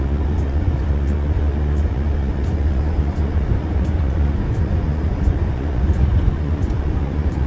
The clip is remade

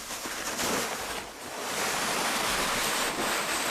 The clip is recorded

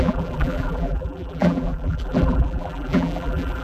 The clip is remade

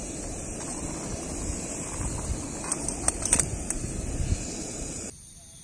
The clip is recorded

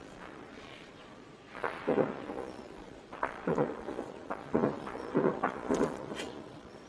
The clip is remade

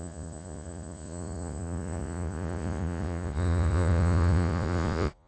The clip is remade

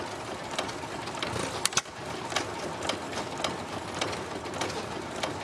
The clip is recorded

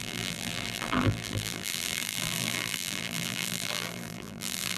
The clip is remade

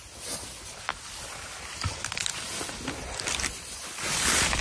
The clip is recorded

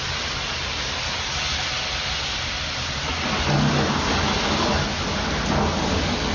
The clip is recorded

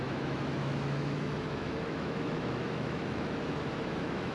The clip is remade